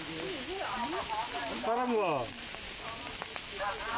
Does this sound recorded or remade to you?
recorded